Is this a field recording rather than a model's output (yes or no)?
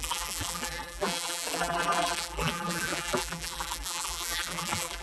no